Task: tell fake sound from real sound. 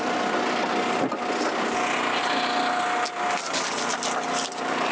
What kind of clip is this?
real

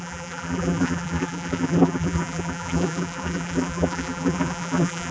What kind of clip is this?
fake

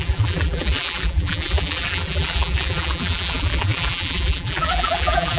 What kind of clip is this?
fake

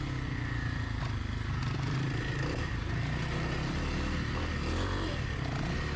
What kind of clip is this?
real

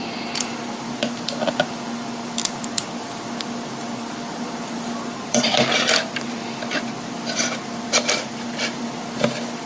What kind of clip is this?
fake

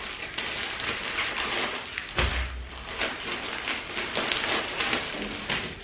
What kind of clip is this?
real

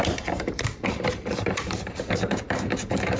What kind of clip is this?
fake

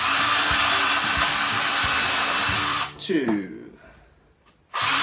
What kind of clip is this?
fake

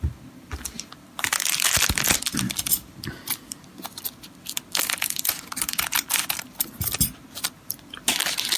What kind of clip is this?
real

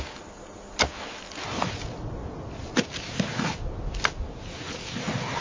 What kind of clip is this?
real